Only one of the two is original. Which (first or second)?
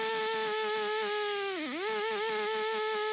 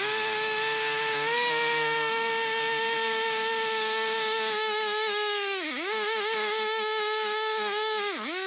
first